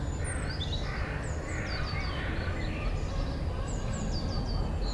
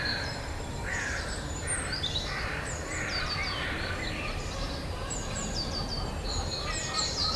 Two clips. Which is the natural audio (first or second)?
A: first